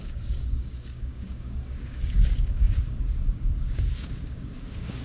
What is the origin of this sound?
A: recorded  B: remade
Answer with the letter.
B